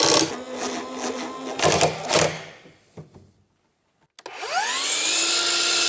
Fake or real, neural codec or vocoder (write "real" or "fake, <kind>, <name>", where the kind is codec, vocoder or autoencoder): real